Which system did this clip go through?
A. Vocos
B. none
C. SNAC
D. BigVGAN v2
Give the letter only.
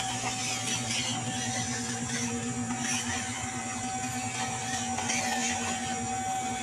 B